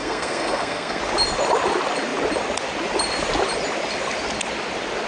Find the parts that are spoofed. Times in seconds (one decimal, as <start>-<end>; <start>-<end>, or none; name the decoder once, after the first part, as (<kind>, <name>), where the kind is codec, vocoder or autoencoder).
0.0-1.0 (codec, SNAC)